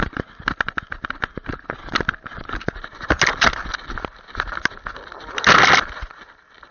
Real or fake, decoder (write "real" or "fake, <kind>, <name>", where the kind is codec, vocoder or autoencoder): real